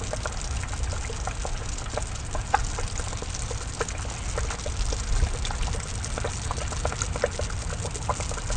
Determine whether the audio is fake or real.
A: real